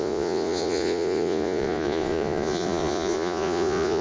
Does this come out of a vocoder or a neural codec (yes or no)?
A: yes